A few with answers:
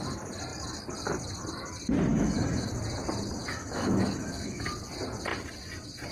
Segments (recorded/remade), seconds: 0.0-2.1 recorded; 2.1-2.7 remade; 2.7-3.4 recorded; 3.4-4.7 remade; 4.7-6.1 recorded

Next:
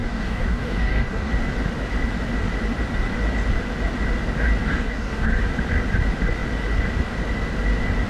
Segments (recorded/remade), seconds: 0.0-1.3 remade; 1.3-4.6 recorded; 4.6-5.3 remade; 5.3-8.1 recorded

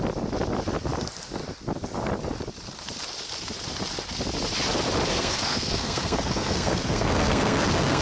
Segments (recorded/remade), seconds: 0.0-5.1 recorded; 5.1-8.0 remade

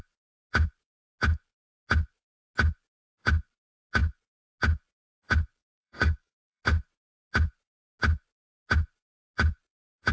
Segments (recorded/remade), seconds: 0.0-5.6 recorded; 5.6-6.6 remade; 6.6-10.1 recorded

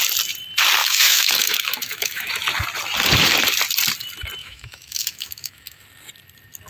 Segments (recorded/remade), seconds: 0.0-0.8 recorded; 0.8-2.3 remade; 2.3-4.4 recorded; 4.4-5.8 remade; 5.8-6.7 recorded

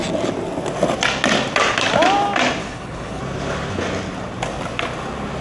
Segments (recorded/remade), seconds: 0.0-2.6 recorded; 2.6-3.2 remade; 3.2-5.4 recorded

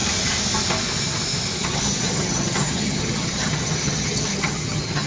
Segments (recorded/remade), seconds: 0.0-1.6 recorded; 1.6-5.1 remade